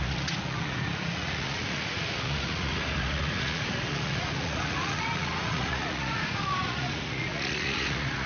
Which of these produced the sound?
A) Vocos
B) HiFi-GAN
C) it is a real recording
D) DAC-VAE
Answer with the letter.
A